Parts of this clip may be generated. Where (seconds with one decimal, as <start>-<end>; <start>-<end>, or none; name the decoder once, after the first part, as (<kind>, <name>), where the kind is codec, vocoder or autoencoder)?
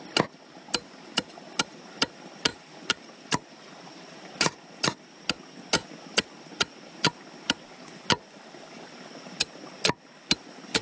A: 2.5-4.5 (vocoder, BigVGAN v2)